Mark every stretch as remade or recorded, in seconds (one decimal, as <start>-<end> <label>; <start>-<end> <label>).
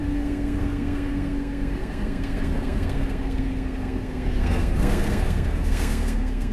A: 0.0-6.5 remade